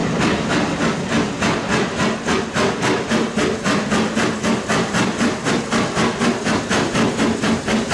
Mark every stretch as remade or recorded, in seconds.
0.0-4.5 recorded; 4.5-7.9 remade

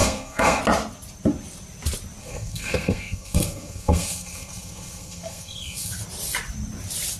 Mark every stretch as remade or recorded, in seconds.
0.0-0.6 remade; 0.6-2.2 recorded; 2.2-5.9 remade; 5.9-7.2 recorded

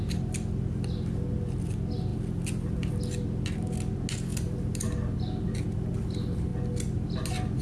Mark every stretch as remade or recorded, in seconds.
0.0-7.6 recorded

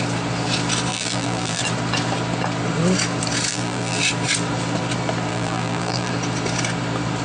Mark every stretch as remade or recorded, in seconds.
0.0-0.9 recorded; 0.9-1.6 remade; 1.6-3.5 recorded; 3.5-4.0 remade; 4.0-5.3 recorded; 5.3-6.1 remade; 6.1-7.2 recorded

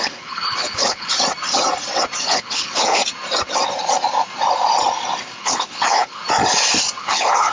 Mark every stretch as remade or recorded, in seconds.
0.0-1.1 remade; 1.1-2.2 recorded; 2.2-3.0 remade; 3.0-5.4 recorded; 5.4-6.2 remade; 6.2-7.0 recorded; 7.0-7.5 remade

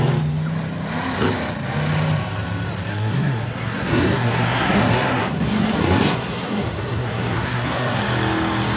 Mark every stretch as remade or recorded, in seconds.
0.0-2.9 recorded; 2.9-8.0 remade; 8.0-8.8 recorded

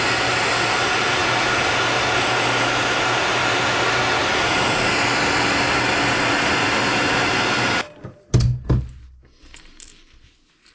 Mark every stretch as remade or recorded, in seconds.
0.0-10.7 recorded